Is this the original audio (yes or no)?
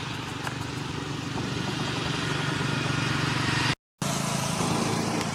yes